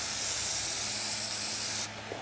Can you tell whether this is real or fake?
real